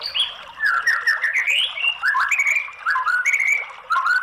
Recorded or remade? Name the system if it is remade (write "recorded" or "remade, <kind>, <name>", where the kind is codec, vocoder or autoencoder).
remade, vocoder, BigVGAN v2